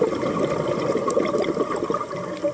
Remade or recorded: recorded